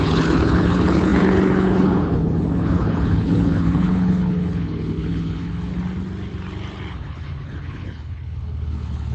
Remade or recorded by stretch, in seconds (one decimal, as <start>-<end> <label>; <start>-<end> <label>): 0.0-5.7 remade; 5.7-6.9 recorded; 6.9-9.1 remade